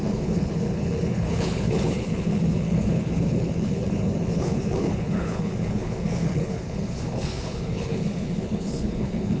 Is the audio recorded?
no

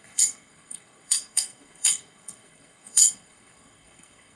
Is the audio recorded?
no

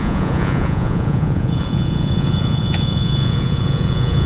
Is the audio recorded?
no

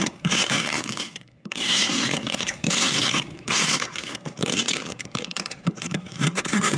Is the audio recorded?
no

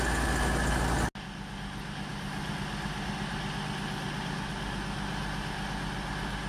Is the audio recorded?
yes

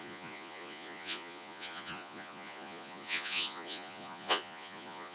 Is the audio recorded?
no